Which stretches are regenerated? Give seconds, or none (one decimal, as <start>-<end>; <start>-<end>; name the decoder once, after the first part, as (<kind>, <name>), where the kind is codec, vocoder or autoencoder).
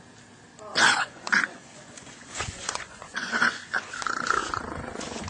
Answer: 0.7-3.9 (vocoder, Vocos); 4.4-5.3